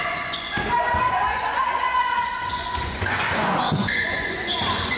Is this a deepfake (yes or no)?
yes